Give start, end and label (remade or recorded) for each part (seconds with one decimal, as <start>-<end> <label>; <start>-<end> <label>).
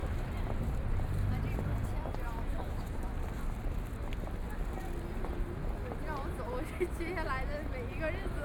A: 0.0-3.1 remade; 3.1-8.4 recorded